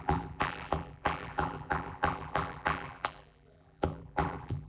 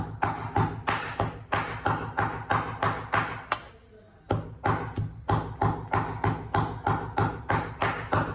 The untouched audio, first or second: second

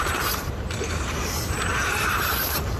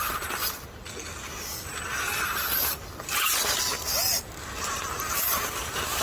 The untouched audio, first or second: second